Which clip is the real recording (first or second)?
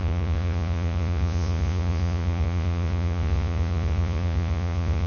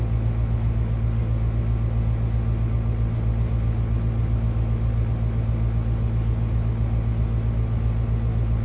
second